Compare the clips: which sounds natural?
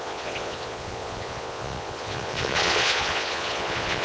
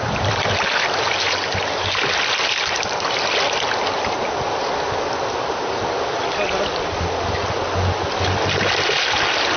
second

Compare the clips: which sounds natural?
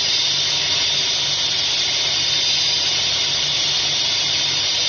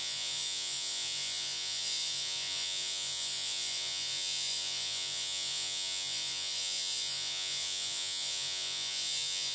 first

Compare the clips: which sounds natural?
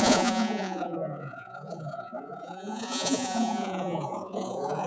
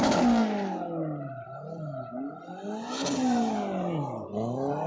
second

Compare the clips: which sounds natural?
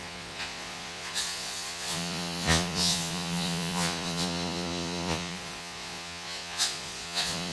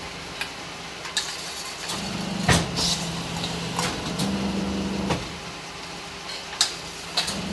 second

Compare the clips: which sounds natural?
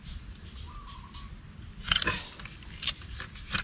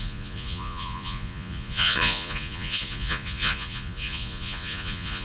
first